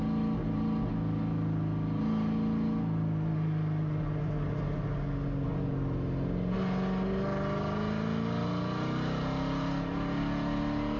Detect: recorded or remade recorded